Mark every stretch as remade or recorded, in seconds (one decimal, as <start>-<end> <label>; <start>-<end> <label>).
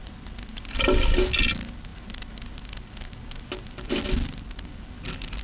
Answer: 0.0-5.4 recorded